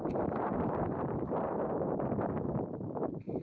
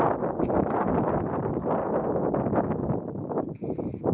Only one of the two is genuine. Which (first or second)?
second